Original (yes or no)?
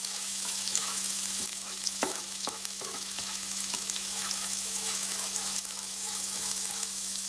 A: no